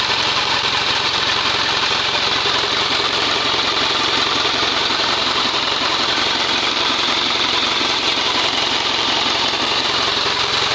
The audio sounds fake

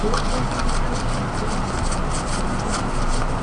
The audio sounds real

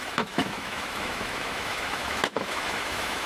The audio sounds fake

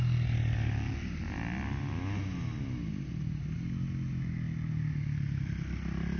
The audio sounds real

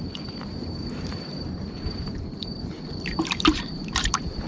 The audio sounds fake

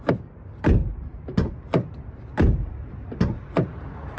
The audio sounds real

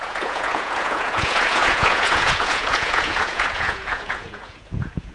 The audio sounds fake